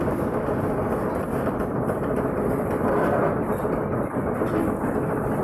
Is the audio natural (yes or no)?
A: yes